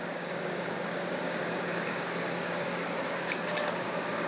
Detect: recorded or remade remade